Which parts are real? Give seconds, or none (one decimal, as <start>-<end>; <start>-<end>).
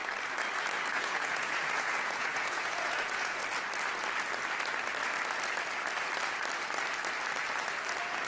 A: 0.0-0.9; 3.4-8.3